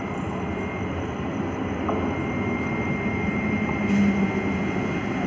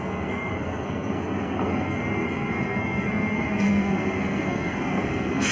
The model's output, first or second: second